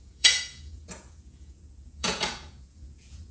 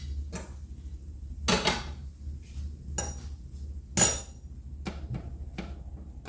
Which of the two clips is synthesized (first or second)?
first